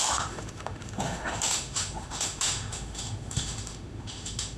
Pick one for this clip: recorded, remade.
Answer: remade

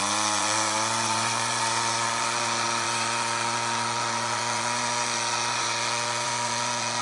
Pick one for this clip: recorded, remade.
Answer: remade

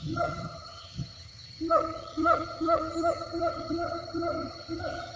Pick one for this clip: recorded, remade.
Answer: remade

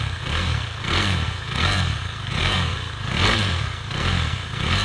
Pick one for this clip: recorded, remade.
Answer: remade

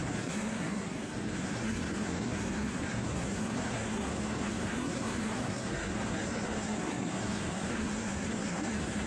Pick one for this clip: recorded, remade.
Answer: remade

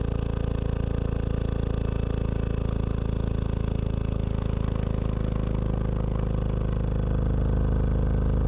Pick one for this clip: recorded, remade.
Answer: recorded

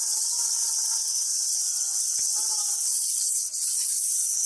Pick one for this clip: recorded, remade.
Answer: remade